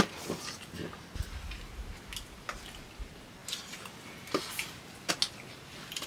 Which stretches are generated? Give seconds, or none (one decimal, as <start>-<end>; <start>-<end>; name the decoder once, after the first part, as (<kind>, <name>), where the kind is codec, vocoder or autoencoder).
none